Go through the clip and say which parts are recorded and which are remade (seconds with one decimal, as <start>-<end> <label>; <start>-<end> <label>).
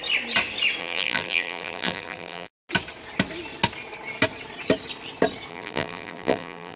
0.0-0.8 recorded; 0.8-2.5 remade; 2.5-5.5 recorded; 5.5-6.8 remade